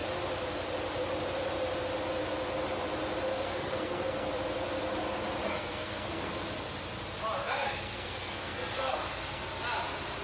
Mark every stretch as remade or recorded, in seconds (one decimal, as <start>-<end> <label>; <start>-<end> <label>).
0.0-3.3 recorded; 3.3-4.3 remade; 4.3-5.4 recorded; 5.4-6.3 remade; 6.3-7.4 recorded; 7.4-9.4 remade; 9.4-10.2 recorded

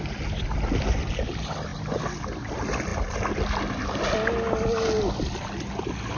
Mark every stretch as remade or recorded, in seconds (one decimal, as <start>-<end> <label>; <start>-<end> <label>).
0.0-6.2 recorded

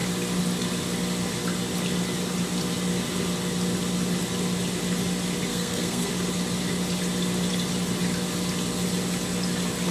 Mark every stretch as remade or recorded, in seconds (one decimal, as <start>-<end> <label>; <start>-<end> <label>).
0.0-5.5 recorded; 5.5-6.1 remade; 6.1-9.9 recorded